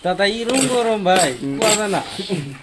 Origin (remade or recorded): recorded